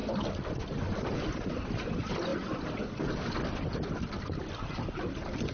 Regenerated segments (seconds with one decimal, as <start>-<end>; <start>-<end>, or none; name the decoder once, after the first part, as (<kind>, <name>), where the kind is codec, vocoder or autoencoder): none